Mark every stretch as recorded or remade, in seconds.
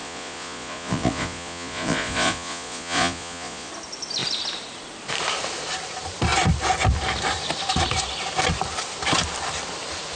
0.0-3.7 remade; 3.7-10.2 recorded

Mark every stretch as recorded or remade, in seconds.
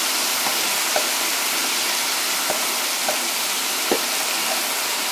0.0-5.1 recorded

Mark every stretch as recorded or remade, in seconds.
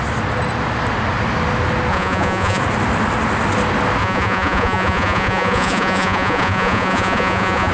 0.0-1.9 recorded; 1.9-2.6 remade; 2.6-4.0 recorded; 4.0-7.7 remade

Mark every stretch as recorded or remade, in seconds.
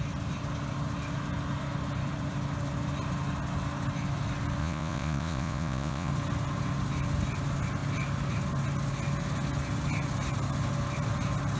0.0-4.6 recorded; 4.6-6.1 remade; 6.1-11.6 recorded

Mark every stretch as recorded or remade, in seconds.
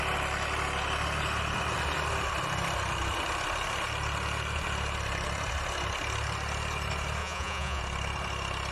0.0-7.2 recorded; 7.2-7.8 remade; 7.8-8.7 recorded